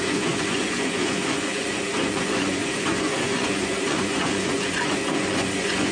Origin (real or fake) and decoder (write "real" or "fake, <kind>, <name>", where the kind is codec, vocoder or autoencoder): fake, vocoder, Vocos